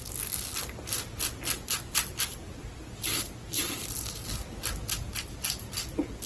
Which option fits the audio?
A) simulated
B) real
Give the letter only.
B